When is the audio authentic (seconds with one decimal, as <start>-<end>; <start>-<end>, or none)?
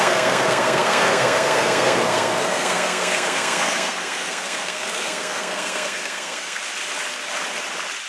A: 6.6-8.1